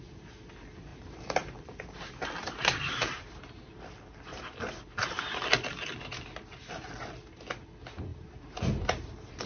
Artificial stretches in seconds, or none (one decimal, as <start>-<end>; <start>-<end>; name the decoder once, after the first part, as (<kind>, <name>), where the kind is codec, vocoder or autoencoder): 0.9-3.7 (vocoder, BigVGAN v2); 8.1-9.5